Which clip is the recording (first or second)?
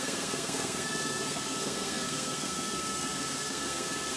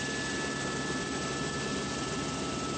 second